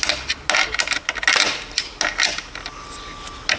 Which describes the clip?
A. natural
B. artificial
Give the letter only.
A